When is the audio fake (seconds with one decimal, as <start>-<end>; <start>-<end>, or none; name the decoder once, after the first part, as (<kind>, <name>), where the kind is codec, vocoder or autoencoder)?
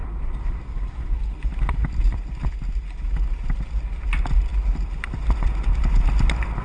none